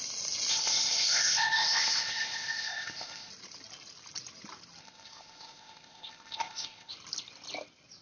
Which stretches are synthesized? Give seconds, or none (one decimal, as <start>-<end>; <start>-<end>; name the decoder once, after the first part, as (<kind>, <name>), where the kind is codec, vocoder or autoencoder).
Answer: 0.5-3.3 (codec, ZipCodec); 4.8-6.9